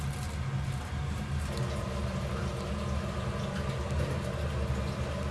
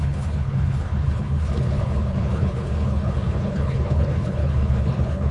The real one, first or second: first